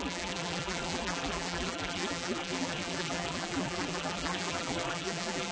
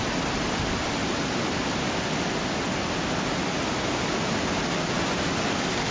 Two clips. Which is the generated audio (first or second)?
first